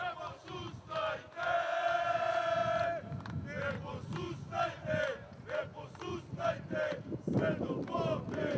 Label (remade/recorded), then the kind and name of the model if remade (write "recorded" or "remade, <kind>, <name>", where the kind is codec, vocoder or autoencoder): recorded